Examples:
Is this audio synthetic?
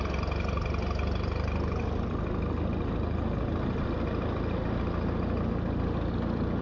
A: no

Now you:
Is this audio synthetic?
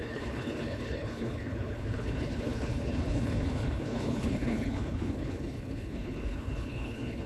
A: yes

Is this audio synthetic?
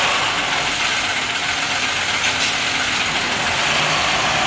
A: no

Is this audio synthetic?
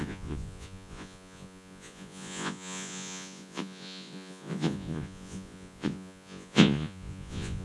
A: yes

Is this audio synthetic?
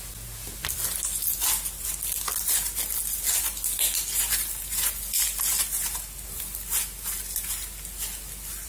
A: no